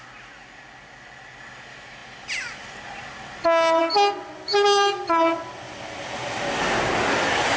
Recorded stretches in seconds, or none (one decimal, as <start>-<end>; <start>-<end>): 0.0-7.6